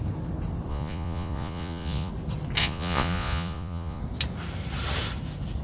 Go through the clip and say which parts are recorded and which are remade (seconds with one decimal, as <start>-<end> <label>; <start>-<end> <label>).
0.0-0.7 recorded; 0.7-2.1 remade; 2.1-2.6 recorded; 2.6-4.0 remade; 4.0-5.6 recorded